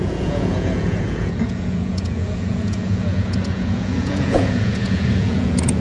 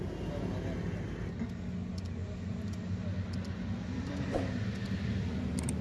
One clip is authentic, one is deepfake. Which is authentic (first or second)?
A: second